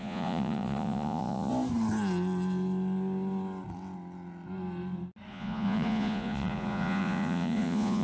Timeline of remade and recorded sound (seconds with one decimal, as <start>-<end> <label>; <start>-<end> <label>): 0.0-1.5 remade; 1.5-5.3 recorded; 5.3-8.0 remade